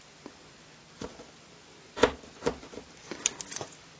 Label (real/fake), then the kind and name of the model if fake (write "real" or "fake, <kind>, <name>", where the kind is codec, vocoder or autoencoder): real